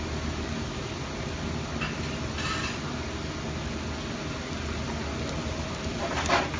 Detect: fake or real real